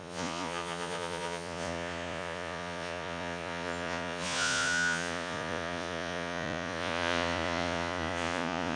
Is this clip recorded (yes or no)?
no